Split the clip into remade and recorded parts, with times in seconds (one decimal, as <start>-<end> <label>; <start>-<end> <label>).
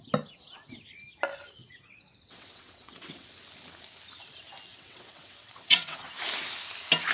0.0-1.6 recorded; 1.6-3.3 remade; 3.3-4.7 recorded; 4.7-6.1 remade; 6.1-7.1 recorded